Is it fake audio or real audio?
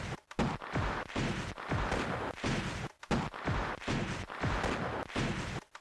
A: real